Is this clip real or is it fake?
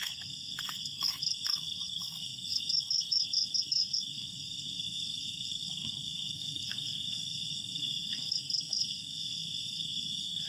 fake